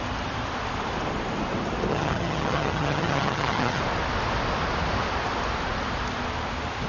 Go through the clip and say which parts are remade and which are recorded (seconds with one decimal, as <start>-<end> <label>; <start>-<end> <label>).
0.0-1.9 recorded; 1.9-3.8 remade; 3.8-6.9 recorded